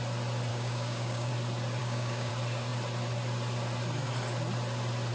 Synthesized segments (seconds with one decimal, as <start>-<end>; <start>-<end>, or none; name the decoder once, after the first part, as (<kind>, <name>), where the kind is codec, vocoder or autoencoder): 0.5-1.3 (codec, DAC); 1.8-2.3